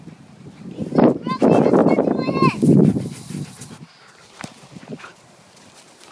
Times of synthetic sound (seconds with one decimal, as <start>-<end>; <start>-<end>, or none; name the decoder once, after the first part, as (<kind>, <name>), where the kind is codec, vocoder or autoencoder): 0.0-6.1 (vocoder, BigVGAN v2)